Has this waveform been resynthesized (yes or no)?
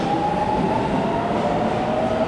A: no